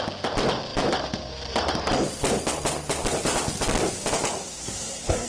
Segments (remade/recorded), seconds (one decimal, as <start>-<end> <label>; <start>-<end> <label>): 0.0-4.4 recorded; 4.4-5.3 remade